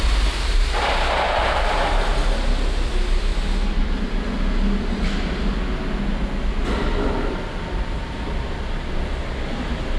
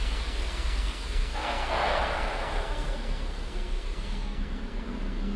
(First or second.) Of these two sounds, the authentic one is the first